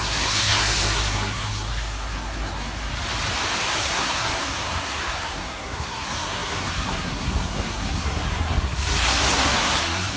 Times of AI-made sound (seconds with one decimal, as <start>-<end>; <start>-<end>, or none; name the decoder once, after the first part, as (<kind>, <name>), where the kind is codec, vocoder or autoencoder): 0.0-2.9 (codec, SNAC); 3.6-10.2